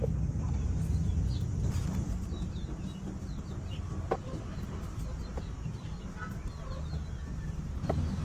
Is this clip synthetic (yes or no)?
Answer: no